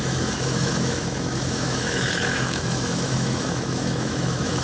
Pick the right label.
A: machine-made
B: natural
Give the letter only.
A